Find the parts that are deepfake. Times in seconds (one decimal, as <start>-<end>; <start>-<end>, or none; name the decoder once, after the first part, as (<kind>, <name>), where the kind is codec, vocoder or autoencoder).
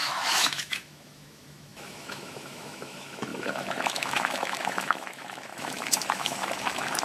0.0-7.0 (autoencoder, DAC-VAE)